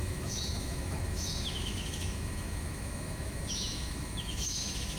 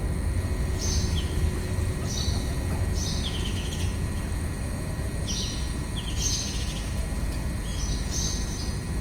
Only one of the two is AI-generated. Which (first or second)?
first